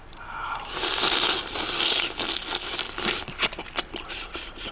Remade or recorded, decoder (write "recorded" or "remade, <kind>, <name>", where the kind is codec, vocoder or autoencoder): recorded